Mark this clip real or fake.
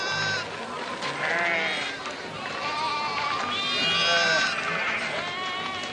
real